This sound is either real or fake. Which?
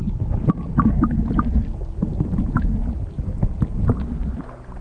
real